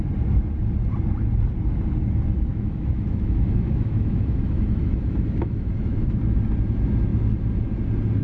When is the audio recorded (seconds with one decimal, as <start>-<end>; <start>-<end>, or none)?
0.0-2.5; 6.2-8.2